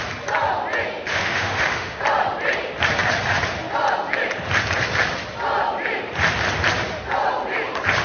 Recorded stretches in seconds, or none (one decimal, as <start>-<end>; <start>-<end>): 0.0-1.1; 2.0-8.0